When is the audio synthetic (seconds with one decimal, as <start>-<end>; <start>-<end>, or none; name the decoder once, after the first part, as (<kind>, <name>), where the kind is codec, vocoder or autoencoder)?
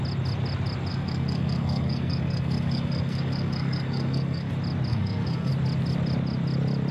0.9-4.5 (codec, SNAC); 4.9-5.5